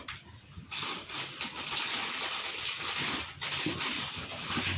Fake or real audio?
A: real